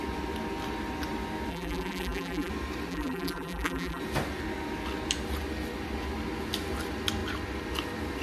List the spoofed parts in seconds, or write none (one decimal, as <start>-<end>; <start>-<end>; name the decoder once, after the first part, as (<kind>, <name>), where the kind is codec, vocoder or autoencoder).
1.5-2.5 (vocoder, BigVGAN v2); 2.9-4.0